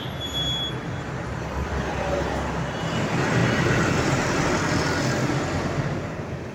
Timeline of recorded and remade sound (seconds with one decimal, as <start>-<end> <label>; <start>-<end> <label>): 0.0-6.5 recorded